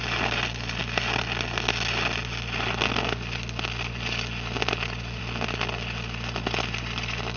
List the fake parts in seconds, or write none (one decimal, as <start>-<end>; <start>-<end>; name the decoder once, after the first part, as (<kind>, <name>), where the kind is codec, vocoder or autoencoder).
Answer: none